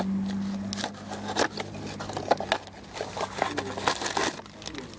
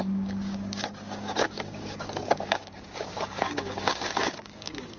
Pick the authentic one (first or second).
first